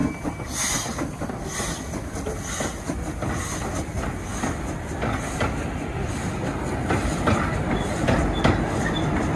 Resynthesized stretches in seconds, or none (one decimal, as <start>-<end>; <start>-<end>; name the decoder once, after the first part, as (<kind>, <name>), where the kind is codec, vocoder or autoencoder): none